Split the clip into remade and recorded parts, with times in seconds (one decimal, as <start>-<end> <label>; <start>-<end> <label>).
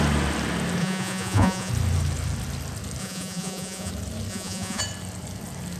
0.0-0.8 recorded; 0.8-1.7 remade; 1.7-3.0 recorded; 3.0-3.9 remade; 3.9-4.3 recorded; 4.3-4.8 remade; 4.8-5.8 recorded